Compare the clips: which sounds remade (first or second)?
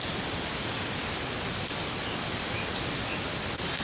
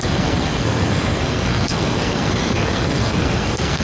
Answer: second